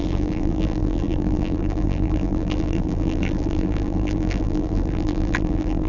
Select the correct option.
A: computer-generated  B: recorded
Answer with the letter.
A